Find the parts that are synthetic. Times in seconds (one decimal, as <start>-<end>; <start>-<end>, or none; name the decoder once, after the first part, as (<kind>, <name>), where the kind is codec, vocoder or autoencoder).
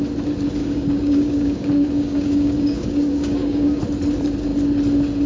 0.6-3.8 (codec, DAC)